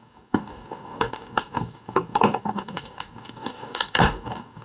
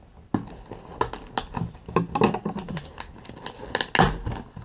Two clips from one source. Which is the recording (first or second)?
second